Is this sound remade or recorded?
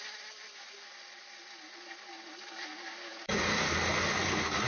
recorded